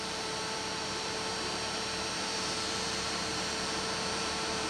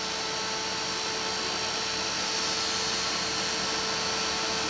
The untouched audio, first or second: second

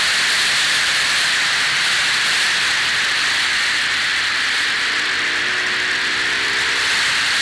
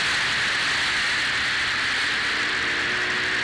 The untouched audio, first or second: second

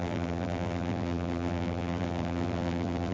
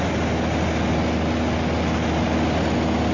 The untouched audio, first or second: second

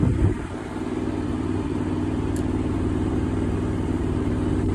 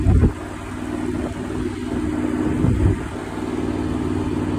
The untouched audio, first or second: second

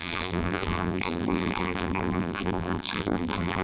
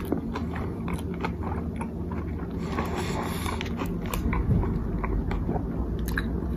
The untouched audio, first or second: second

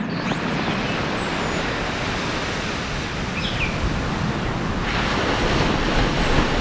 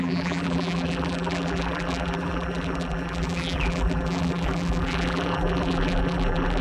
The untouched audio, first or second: first